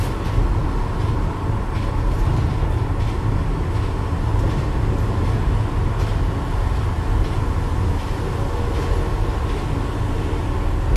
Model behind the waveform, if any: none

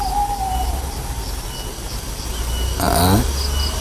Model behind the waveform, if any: none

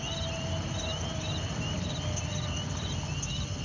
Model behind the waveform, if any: none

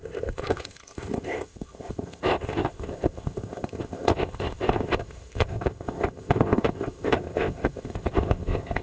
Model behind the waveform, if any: codec, ZipCodec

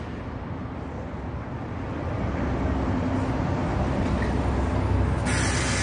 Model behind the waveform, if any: none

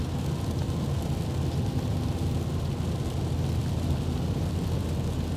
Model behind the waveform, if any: none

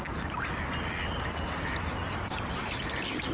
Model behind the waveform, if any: none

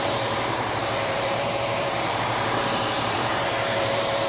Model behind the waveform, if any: vocoder, BigVGAN v2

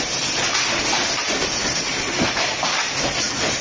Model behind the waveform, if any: none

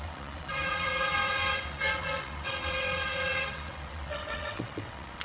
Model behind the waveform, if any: vocoder, WaveNeXt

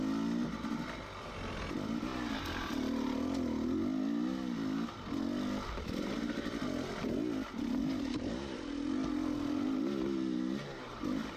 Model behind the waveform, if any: none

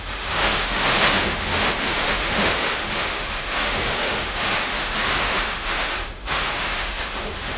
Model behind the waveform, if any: autoencoder, DAC-VAE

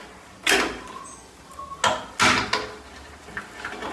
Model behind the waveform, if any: none